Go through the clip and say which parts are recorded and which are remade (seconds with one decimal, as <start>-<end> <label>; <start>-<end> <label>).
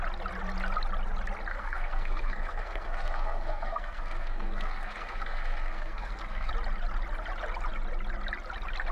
0.0-1.5 recorded; 1.5-6.5 remade; 6.5-8.9 recorded